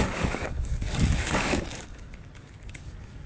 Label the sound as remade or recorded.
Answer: remade